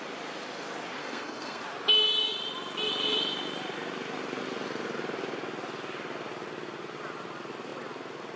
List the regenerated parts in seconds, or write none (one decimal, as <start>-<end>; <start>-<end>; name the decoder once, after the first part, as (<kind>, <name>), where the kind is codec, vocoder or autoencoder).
1.0-1.6 (codec, SNAC)